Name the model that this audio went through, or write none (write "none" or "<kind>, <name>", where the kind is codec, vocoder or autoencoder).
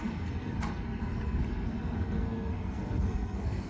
codec, SNAC